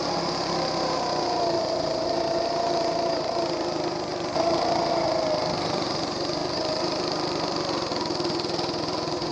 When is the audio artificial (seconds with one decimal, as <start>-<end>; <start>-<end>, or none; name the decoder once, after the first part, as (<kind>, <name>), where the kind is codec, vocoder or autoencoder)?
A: 6.4-7.9 (vocoder, BigVGAN v2)